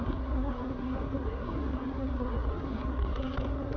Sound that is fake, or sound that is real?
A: fake